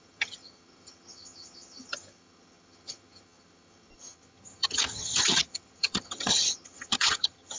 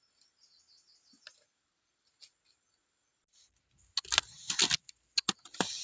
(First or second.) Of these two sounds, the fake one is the first